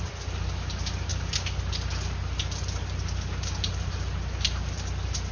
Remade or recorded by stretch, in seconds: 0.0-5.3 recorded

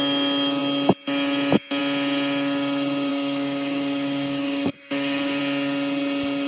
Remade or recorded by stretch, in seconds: 0.0-3.1 recorded; 3.1-5.4 remade; 5.4-6.5 recorded

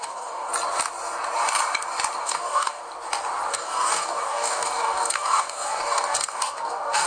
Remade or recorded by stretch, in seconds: 0.0-0.5 remade; 0.5-2.2 recorded; 2.2-2.8 remade; 2.8-3.5 recorded; 3.5-7.1 remade

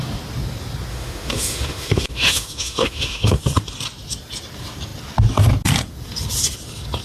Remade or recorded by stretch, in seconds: 0.0-0.9 recorded; 0.9-3.4 remade; 3.4-7.0 recorded

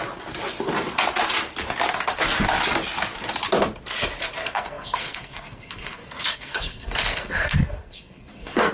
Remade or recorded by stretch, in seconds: 0.0-4.4 recorded; 4.4-8.7 remade